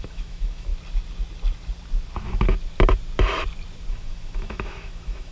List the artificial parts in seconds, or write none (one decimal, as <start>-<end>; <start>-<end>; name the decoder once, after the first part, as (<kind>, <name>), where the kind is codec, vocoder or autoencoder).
0.0-0.7 (autoencoder, DAC-VAE); 3.9-5.3